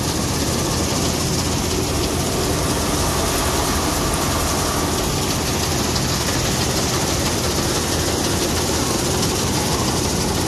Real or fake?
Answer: real